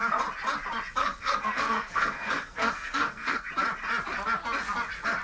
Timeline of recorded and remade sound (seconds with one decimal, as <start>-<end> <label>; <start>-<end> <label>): 0.0-1.0 recorded; 1.0-3.5 remade; 3.5-5.2 recorded